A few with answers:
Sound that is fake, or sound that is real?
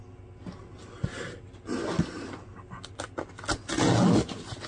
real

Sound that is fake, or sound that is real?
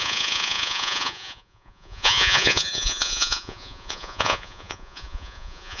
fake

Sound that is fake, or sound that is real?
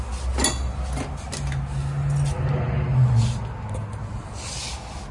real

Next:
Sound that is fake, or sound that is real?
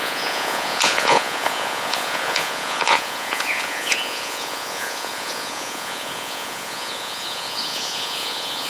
fake